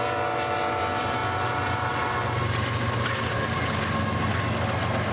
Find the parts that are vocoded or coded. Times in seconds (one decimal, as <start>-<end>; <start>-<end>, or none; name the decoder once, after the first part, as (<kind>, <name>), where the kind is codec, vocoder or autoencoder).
none